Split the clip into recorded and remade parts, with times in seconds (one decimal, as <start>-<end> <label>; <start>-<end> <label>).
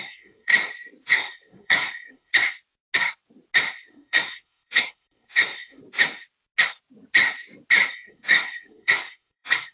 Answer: 0.0-0.5 remade; 0.5-1.0 recorded; 1.0-2.3 remade; 2.3-3.9 recorded; 3.9-5.8 remade; 5.8-7.9 recorded; 7.9-9.7 remade